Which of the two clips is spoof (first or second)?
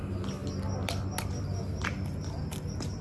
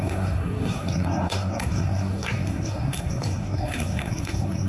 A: second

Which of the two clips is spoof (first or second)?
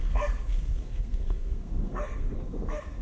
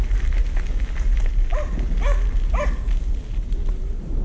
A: first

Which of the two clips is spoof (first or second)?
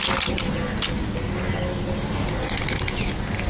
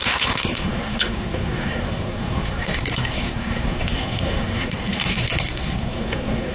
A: second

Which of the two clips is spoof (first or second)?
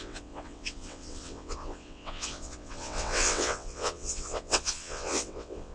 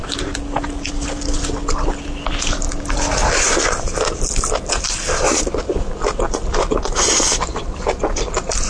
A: first